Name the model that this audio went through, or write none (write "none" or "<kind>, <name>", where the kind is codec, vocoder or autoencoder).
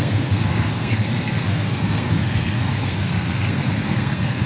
codec, SNAC